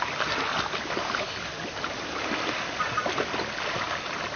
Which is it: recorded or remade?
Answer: recorded